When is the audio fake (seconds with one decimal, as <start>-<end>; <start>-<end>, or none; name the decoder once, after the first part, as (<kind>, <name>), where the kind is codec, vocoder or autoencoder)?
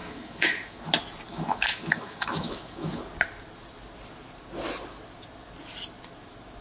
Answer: 0.0-0.8 (autoencoder, DAC-VAE); 1.3-3.0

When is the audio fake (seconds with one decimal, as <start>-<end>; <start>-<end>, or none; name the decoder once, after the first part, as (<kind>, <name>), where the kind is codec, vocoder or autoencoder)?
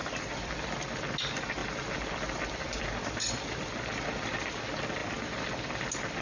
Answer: 0.0-1.0 (vocoder, BigVGAN v2); 1.6-4.6; 5.0-5.8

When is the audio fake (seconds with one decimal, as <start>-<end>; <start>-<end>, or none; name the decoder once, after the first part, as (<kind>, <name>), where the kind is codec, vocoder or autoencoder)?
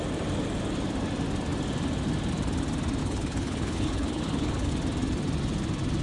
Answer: 3.0-4.7 (codec, HILCodec)